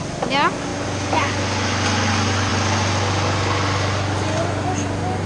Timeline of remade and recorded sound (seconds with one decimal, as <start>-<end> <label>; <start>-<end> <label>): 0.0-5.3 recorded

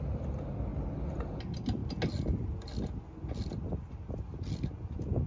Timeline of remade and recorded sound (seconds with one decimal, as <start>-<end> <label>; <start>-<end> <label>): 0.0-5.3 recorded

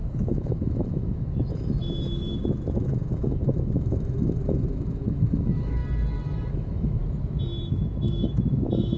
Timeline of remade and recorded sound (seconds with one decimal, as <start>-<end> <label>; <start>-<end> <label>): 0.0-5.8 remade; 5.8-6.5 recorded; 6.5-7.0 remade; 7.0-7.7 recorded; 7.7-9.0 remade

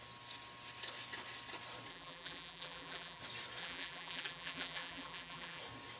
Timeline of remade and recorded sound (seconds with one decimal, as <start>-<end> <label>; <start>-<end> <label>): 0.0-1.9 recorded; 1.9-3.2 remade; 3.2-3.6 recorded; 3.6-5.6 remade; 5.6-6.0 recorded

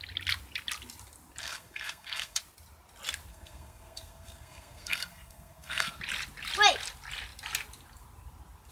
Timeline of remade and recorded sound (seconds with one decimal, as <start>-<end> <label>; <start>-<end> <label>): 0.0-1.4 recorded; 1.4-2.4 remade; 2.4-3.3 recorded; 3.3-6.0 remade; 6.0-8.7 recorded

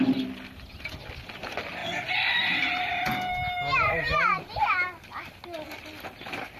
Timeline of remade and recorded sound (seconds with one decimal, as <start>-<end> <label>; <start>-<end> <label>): 0.0-6.6 recorded